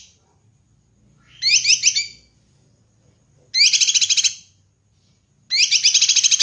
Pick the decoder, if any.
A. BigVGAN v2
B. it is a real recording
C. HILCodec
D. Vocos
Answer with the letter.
B